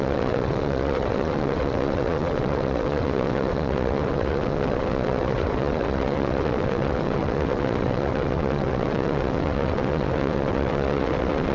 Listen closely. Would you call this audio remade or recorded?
remade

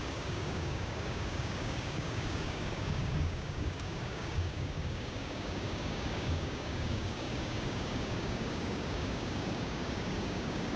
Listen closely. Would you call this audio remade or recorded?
remade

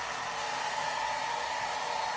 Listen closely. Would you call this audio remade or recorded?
recorded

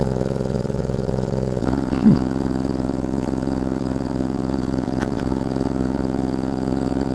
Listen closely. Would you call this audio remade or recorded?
remade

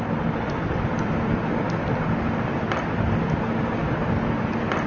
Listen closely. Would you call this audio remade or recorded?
recorded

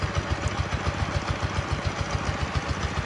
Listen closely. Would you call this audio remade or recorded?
recorded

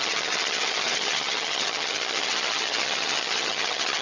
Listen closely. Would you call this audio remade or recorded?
remade